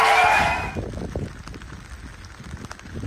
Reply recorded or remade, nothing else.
recorded